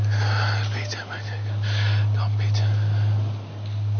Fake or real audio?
real